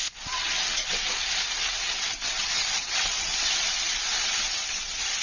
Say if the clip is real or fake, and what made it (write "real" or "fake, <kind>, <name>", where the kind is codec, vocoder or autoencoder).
fake, vocoder, WaveNeXt